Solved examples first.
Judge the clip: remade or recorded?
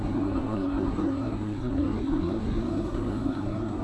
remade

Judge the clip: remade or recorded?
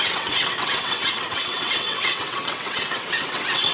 remade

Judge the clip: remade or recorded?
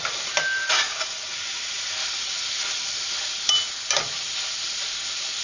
recorded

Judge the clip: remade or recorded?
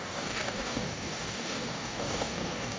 remade